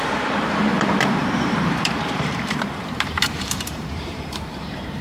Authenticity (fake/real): fake